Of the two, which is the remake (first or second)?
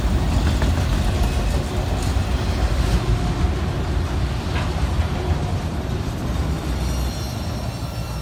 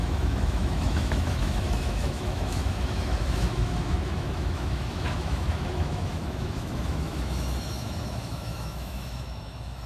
second